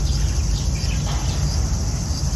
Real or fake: real